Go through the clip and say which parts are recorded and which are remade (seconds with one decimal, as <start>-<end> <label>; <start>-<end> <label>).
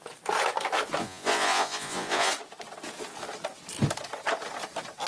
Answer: 0.0-1.0 recorded; 1.0-2.3 remade; 2.3-5.1 recorded